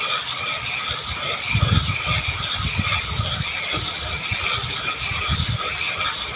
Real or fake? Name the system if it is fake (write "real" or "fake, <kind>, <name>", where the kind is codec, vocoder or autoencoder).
real